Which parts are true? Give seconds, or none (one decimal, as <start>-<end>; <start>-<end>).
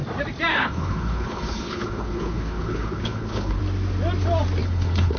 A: 0.0-0.5; 3.6-4.6